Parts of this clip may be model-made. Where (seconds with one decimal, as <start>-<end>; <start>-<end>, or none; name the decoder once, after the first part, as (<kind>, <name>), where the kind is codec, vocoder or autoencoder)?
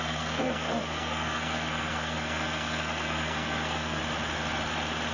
0.0-4.0 (codec, SNAC)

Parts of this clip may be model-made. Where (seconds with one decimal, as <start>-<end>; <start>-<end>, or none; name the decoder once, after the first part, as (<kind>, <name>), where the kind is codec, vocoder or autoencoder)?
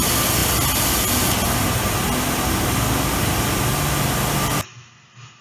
none